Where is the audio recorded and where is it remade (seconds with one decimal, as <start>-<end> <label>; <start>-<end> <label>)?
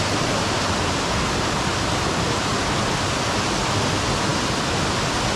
0.0-5.4 recorded